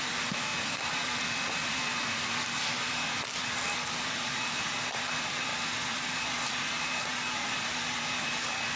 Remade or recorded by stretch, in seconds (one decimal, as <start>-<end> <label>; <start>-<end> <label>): 0.0-8.8 recorded